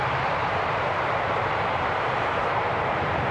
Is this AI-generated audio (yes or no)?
yes